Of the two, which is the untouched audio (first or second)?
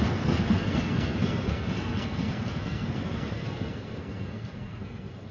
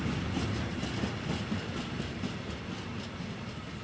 second